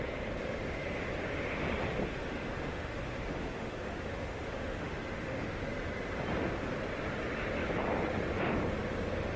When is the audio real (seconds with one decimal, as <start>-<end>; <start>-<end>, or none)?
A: 0.0-2.2; 5.6-9.4